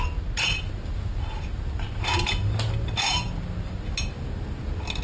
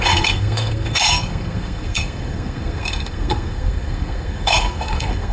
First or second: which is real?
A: first